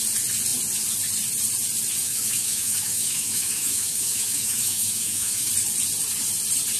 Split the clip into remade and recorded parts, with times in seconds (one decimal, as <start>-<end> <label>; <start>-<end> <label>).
0.0-2.0 recorded; 2.0-5.5 remade; 5.5-6.8 recorded